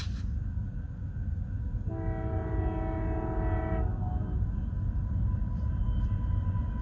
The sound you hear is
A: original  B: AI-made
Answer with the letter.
A